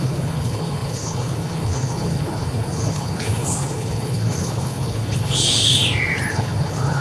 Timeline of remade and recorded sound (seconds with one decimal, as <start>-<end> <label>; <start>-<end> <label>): 0.0-5.8 remade; 5.8-6.3 recorded; 6.3-7.0 remade

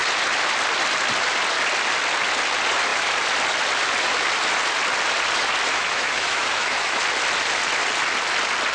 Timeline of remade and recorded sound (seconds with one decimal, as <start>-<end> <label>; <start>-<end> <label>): 0.0-5.7 recorded; 5.7-7.0 remade; 7.0-8.7 recorded

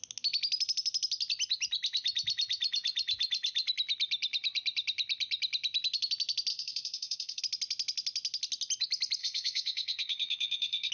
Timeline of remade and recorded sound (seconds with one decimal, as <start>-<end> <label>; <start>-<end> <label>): 0.0-6.5 recorded; 6.5-7.4 remade; 7.4-9.2 recorded; 9.2-10.9 remade

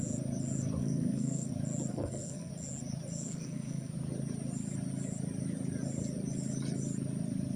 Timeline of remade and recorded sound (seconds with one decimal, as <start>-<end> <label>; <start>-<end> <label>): 0.0-0.8 recorded; 0.8-1.5 remade; 1.5-1.9 recorded; 1.9-2.5 remade; 2.5-3.2 recorded; 3.2-3.9 remade; 3.9-7.6 recorded

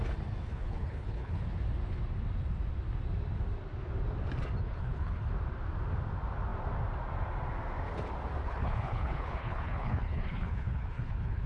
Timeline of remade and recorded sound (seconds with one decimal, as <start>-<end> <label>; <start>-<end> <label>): 0.0-0.4 recorded; 0.4-1.4 remade; 1.4-4.6 recorded; 4.6-5.3 remade; 5.3-8.4 recorded; 8.4-11.5 remade